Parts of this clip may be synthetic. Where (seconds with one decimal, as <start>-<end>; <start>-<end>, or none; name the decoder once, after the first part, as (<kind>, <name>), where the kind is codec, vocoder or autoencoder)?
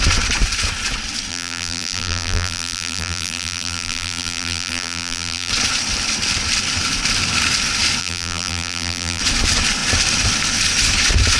1.3-5.5 (vocoder, BigVGAN v2); 8.0-9.2